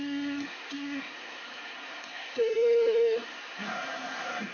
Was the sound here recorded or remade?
remade